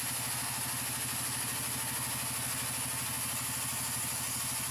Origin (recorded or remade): recorded